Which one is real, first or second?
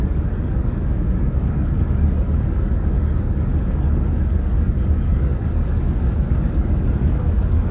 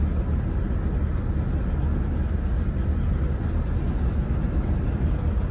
second